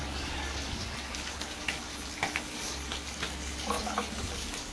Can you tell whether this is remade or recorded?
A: remade